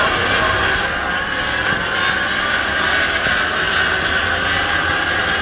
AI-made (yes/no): no